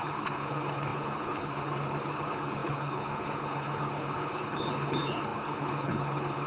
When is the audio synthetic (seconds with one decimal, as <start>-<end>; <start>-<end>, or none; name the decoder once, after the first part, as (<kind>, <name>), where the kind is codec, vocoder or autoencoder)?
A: 0.0-6.5 (codec, HILCodec)